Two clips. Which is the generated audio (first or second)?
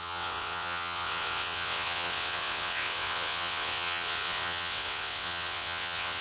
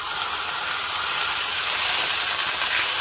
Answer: first